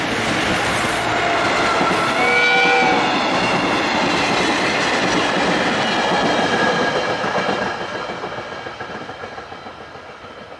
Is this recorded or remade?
recorded